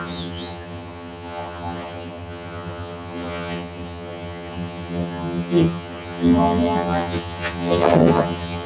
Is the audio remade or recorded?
remade